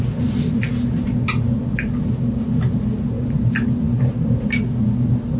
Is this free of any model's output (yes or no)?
yes